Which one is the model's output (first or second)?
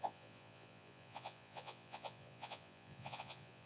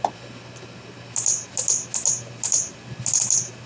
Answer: first